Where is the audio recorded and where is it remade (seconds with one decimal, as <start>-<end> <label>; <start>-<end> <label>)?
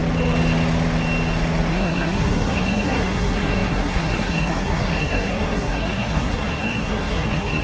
0.0-1.7 recorded; 1.7-7.6 remade